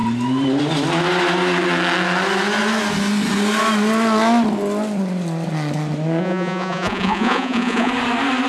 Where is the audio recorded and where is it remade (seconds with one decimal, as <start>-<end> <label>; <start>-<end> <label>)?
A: 0.0-6.2 recorded; 6.2-7.9 remade; 7.9-8.5 recorded